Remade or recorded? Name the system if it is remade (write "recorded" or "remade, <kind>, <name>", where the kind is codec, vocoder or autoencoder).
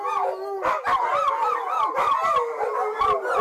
recorded